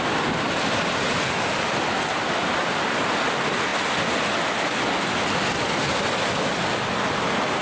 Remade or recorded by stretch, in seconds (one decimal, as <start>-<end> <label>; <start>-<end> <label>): 0.0-7.6 recorded